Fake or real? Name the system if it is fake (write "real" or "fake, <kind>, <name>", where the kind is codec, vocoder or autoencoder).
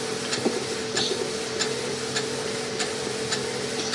real